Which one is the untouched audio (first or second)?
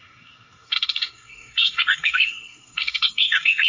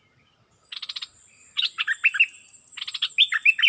second